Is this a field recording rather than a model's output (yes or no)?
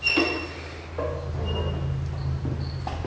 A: yes